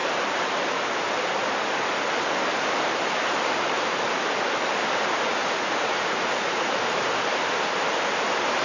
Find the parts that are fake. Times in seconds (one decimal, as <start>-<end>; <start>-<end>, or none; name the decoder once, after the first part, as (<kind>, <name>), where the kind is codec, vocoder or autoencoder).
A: 5.4-6.7 (vocoder, Vocos)